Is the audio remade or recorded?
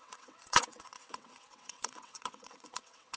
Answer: remade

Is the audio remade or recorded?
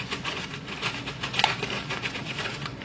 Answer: remade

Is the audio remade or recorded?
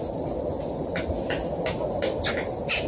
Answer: recorded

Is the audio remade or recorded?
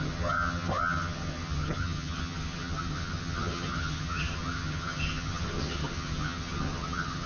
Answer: remade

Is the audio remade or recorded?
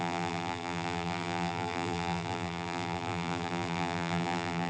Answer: remade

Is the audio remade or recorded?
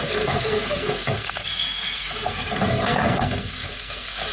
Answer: remade